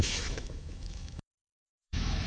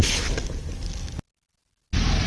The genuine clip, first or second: second